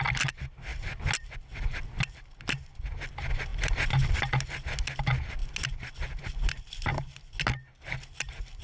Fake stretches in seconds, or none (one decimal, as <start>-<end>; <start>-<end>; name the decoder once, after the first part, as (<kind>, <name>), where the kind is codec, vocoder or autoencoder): none

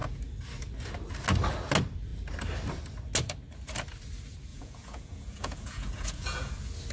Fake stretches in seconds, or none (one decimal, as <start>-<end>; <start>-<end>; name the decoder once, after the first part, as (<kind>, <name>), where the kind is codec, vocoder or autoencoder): 4.5-6.5 (vocoder, Vocos)

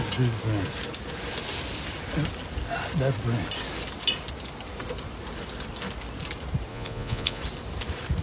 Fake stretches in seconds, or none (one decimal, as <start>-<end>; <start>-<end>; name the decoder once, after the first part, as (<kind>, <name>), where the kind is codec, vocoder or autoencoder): 6.7-7.4 (vocoder, Vocos)

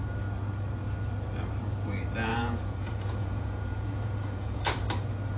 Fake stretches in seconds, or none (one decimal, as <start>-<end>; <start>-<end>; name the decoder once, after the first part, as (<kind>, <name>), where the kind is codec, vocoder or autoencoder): 2.3-4.9 (vocoder, Vocos)

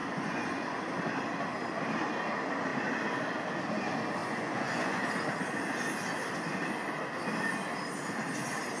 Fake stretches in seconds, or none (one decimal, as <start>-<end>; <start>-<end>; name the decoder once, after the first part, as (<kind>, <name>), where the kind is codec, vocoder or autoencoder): 0.0-0.8 (vocoder, Vocos); 4.2-5.0

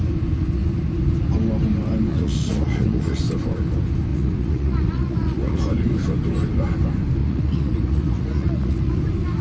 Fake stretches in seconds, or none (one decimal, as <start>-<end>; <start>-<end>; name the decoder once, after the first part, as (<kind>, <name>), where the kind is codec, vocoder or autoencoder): 2.1-3.2 (vocoder, Vocos); 4.1-5.6; 7.2-9.0

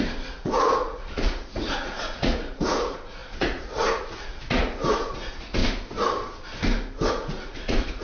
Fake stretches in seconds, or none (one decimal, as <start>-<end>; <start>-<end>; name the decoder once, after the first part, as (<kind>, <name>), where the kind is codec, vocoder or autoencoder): 0.0-5.6 (vocoder, Vocos); 7.1-8.0